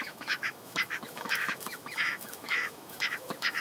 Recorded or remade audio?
remade